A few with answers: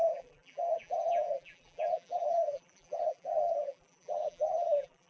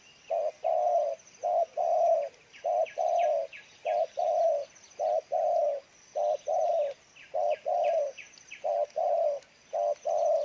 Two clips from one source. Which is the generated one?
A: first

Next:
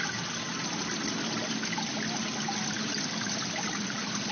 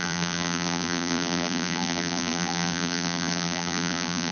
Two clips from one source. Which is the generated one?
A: second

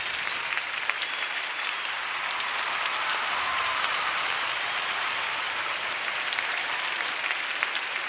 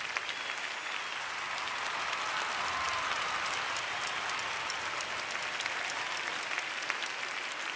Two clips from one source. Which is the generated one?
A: first